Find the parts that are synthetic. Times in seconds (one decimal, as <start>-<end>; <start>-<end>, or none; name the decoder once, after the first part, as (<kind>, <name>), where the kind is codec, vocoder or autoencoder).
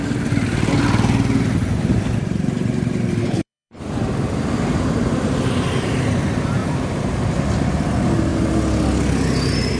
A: 3.2-3.8 (codec, HILCodec)